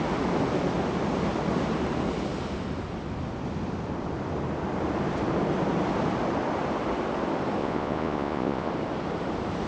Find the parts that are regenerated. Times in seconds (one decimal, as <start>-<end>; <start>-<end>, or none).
7.6-8.7